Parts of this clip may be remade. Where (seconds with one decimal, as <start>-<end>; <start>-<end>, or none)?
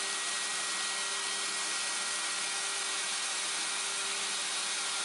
none